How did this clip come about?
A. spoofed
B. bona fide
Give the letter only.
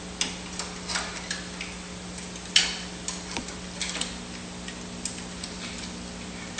B